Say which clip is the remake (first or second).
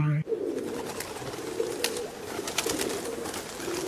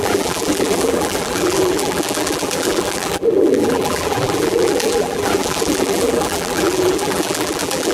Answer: second